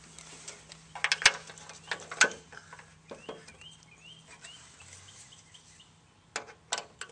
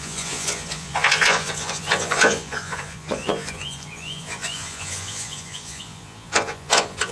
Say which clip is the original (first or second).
first